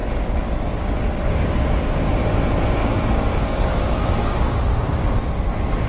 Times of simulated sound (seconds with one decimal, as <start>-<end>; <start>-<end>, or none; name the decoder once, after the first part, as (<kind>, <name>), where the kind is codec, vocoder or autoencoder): 1.1-1.7 (codec, DAC); 2.8-5.2